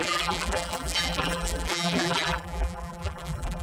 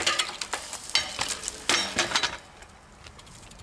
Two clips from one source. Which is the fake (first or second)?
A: first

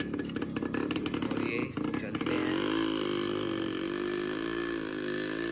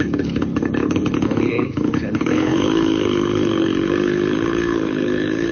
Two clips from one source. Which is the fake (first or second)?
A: second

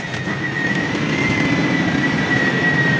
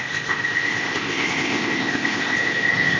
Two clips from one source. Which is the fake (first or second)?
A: second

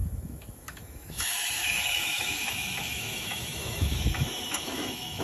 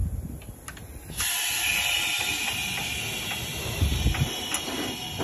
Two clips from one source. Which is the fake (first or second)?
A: first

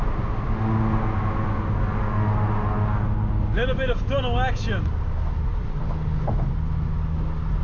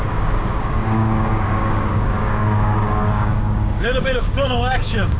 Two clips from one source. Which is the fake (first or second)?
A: second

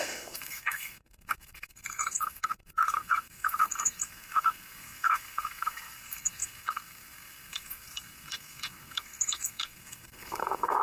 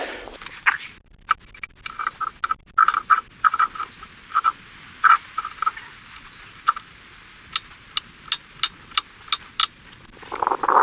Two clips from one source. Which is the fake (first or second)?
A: first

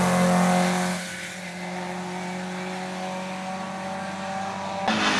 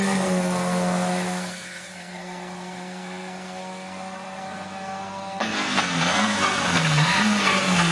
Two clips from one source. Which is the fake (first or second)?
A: second